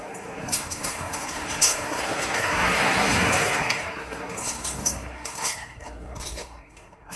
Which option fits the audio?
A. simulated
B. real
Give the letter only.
A